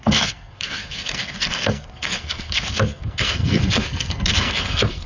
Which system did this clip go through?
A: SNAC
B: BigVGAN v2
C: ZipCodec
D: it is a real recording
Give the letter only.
A